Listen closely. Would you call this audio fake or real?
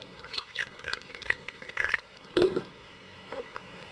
fake